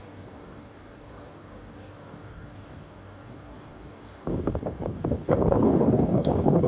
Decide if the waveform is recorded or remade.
remade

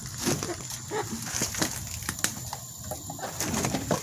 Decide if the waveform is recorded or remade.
recorded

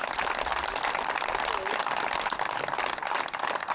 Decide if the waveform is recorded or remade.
recorded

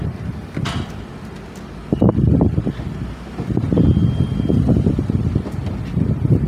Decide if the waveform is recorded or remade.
recorded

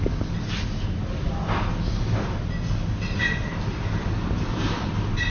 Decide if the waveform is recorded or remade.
recorded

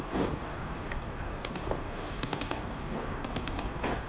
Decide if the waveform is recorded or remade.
remade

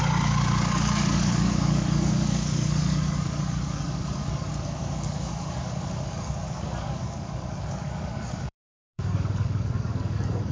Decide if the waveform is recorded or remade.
remade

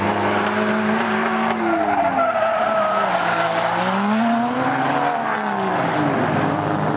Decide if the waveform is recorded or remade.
recorded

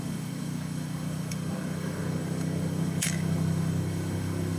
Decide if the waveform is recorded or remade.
remade